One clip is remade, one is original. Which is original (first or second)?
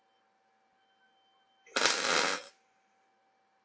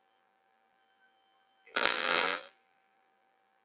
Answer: first